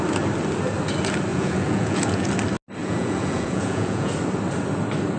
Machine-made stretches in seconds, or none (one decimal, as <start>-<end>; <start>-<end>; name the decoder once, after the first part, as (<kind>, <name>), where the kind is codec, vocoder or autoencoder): 1.3-2.3 (vocoder, Vocos); 2.8-4.1